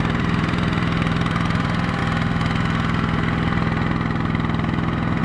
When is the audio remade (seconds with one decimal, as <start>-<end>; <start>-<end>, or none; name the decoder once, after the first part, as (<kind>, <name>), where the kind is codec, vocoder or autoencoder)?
0.0-2.0 (vocoder, BigVGAN v2)